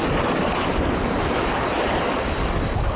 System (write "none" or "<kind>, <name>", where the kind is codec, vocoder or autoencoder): none